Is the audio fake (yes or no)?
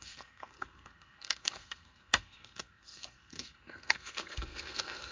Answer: yes